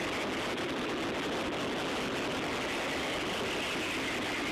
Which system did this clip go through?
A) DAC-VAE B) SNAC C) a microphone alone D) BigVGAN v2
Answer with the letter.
C